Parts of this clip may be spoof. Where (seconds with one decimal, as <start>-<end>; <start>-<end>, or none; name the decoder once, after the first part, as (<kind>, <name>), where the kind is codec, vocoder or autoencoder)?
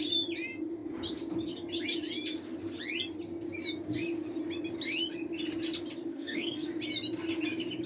6.1-6.7 (codec, SNAC)